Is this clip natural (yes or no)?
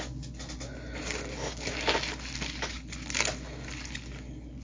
yes